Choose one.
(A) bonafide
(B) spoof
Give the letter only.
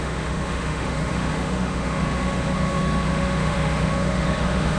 B